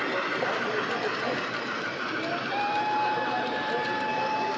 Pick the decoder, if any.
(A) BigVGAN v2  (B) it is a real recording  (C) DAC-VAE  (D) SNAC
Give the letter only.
B